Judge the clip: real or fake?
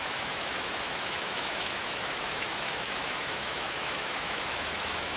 fake